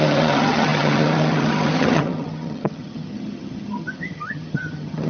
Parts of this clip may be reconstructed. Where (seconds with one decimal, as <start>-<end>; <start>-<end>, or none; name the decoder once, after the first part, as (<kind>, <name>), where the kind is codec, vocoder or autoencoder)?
0.0-5.1 (vocoder, HiFi-GAN)